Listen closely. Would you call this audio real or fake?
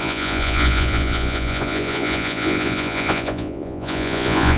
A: fake